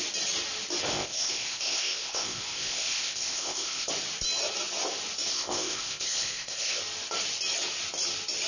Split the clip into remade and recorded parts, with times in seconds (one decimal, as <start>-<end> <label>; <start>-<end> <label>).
0.0-0.9 recorded; 0.9-3.9 remade; 3.9-5.3 recorded; 5.3-6.8 remade; 6.8-8.5 recorded